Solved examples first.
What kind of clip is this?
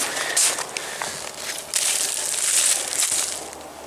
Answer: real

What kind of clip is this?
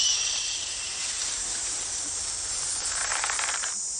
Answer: fake